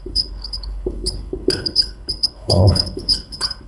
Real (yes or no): no